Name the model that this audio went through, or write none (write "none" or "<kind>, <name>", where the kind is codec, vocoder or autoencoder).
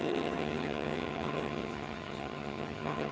vocoder, HiFi-GAN